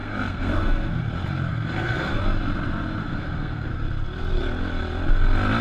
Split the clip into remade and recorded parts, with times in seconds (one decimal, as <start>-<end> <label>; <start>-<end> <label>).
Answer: 0.0-1.0 remade; 1.0-1.5 recorded; 1.5-2.2 remade; 2.2-3.0 recorded; 3.0-3.7 remade; 3.7-5.6 recorded